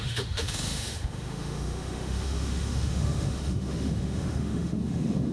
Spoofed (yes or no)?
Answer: yes